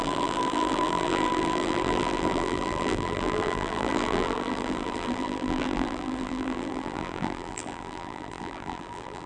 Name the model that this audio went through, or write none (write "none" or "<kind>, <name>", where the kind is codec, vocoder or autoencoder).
vocoder, BigVGAN v2